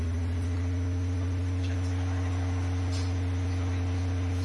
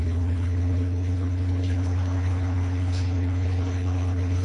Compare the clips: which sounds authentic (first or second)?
first